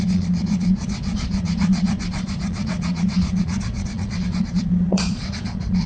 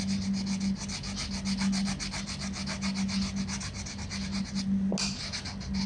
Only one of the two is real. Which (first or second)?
second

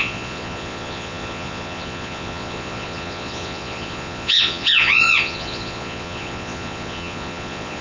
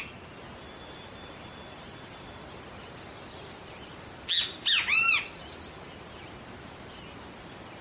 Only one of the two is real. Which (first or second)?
second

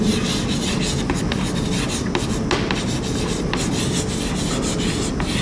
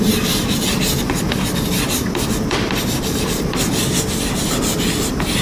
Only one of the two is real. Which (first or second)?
first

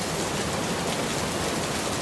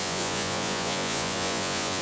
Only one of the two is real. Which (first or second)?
first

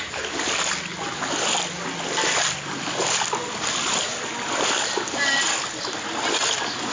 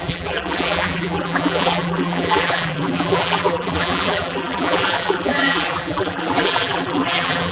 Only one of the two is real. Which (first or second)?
first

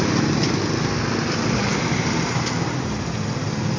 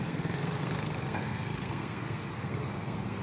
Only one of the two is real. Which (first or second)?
first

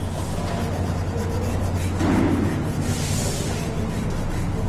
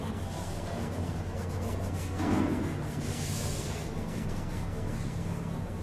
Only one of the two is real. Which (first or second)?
first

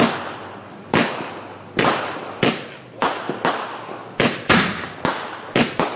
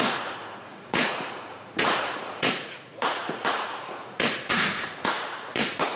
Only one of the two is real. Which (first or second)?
first